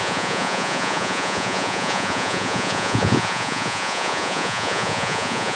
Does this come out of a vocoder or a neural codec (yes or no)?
yes